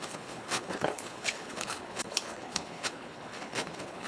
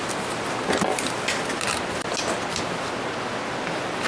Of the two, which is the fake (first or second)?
first